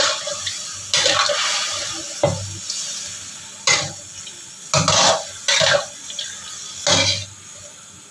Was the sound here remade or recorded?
recorded